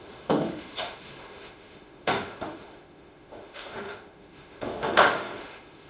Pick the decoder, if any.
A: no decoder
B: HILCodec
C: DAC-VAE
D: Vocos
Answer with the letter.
C